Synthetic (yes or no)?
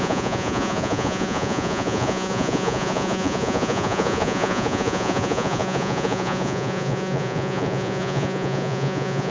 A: yes